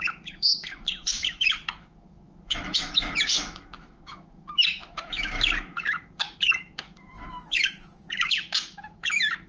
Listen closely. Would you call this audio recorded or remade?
remade